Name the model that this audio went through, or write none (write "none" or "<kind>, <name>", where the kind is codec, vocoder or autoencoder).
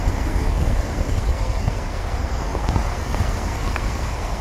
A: codec, SNAC